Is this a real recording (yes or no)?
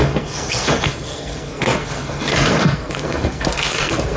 no